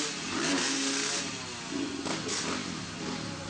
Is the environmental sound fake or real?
real